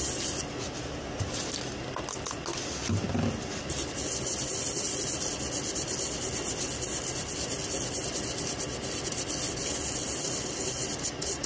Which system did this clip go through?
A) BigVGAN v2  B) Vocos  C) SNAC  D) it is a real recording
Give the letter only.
D